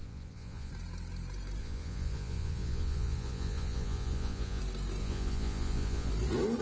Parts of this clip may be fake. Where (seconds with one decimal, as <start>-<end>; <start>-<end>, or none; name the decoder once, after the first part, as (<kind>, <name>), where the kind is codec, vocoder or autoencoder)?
0.0-0.7 (vocoder, Vocos); 1.6-4.6; 5.0-6.1

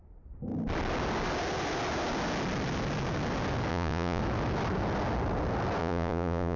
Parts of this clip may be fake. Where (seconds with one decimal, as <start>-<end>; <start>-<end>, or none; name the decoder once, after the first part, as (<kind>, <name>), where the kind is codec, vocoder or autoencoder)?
3.7-4.2 (vocoder, Vocos); 5.8-6.6

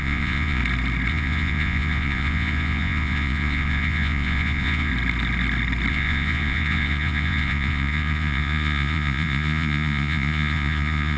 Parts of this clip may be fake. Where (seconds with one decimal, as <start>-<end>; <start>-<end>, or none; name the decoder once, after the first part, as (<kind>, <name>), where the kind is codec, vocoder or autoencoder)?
0.0-0.6 (vocoder, Vocos); 1.1-4.9; 5.9-11.2

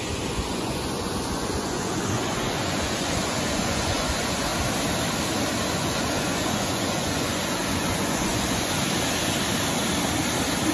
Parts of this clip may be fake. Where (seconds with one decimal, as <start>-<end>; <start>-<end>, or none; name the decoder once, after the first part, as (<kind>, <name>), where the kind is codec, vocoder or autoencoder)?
0.0-4.5 (vocoder, Vocos); 5.7-8.8

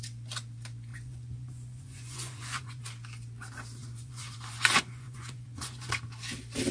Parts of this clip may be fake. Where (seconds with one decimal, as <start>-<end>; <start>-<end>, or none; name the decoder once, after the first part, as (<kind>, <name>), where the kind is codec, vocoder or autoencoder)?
0.9-2.8 (vocoder, Vocos); 3.8-5.9

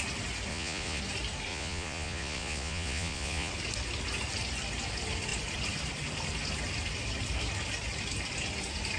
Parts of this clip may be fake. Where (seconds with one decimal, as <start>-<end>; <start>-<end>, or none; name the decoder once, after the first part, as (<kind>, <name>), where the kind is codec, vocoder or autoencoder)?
0.5-1.0 (vocoder, Vocos); 1.5-3.5